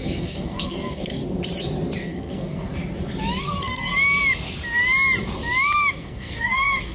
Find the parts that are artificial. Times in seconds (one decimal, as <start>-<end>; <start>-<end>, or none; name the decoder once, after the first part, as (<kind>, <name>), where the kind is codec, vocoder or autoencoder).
0.0-1.2 (codec, SNAC); 2.0-2.7; 3.4-3.9; 5.9-6.9